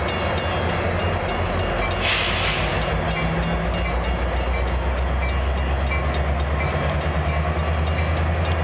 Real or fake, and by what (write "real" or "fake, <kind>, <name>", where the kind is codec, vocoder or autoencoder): real